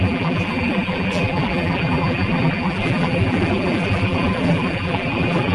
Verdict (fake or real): fake